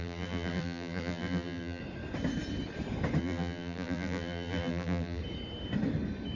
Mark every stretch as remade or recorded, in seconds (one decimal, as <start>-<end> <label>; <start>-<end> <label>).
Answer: 0.0-1.8 remade; 1.8-3.2 recorded; 3.2-5.2 remade; 5.2-6.4 recorded